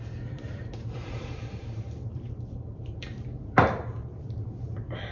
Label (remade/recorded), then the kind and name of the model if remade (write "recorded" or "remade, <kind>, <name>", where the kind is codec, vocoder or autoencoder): remade, vocoder, BigVGAN v2